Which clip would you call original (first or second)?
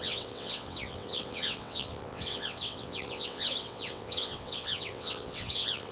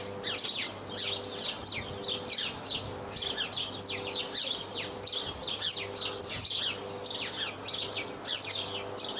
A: second